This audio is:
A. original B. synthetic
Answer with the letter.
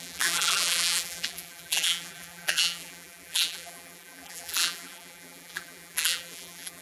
B